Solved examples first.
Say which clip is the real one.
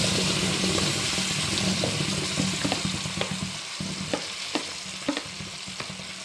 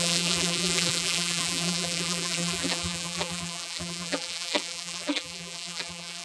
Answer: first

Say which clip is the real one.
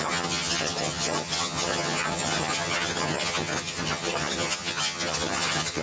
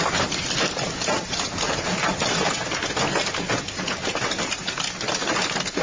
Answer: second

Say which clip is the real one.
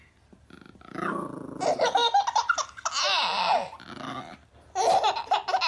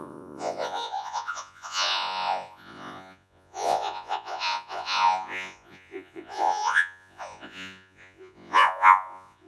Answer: first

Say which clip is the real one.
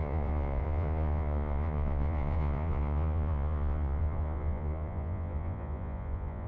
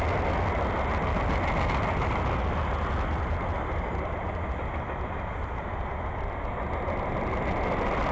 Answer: second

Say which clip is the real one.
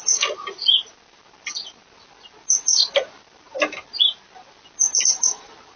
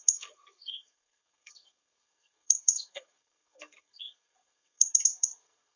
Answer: first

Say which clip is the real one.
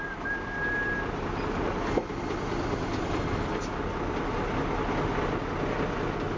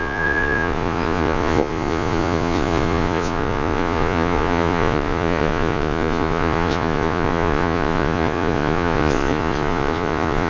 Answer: first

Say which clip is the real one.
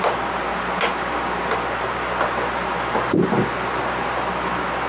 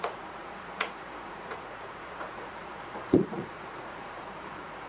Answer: first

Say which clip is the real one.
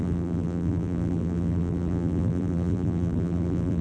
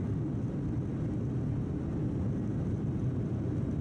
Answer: second